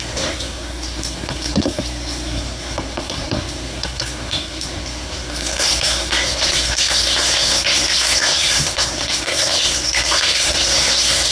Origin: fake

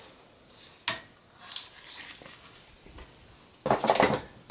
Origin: real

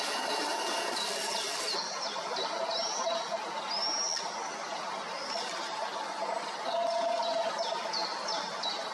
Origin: real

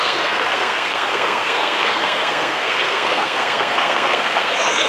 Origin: fake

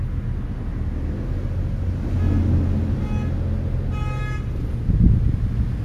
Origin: real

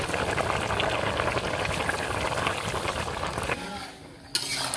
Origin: real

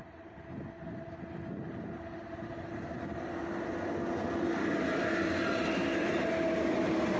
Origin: real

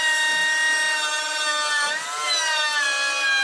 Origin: real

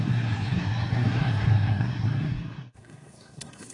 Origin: fake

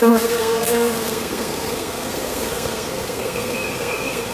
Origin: fake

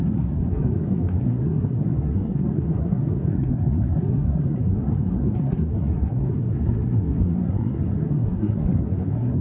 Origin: fake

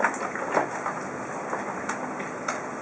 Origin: real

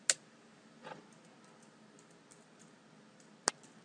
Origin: real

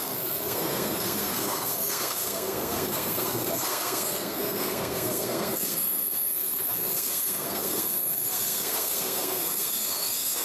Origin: fake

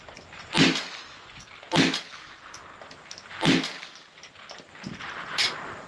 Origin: real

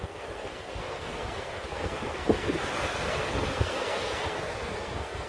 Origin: fake